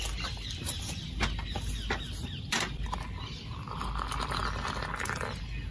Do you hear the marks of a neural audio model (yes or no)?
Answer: no